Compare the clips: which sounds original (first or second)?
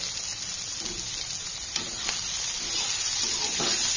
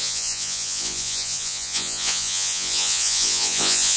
first